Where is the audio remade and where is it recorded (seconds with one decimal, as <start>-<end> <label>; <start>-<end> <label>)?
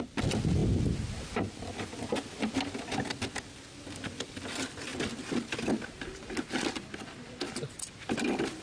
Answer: 0.0-8.6 recorded